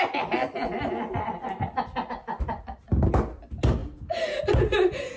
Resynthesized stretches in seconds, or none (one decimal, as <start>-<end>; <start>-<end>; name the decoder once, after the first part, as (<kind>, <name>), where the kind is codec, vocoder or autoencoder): none